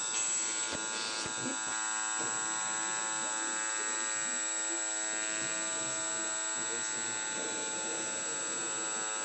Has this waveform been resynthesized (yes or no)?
no